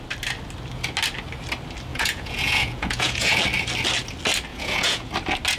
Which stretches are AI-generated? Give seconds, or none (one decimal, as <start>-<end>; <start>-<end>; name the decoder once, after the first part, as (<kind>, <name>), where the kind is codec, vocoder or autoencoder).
1.9-3.4 (vocoder, Vocos); 4.5-5.1